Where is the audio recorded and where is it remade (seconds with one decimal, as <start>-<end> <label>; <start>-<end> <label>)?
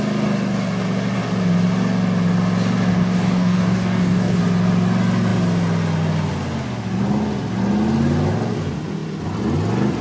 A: 0.0-2.9 recorded; 2.9-4.4 remade; 4.4-10.0 recorded